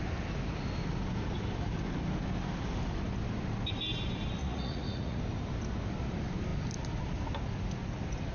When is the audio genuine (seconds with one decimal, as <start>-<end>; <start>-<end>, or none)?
0.0-4.4; 5.2-8.3